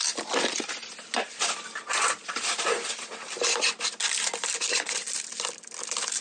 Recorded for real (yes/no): yes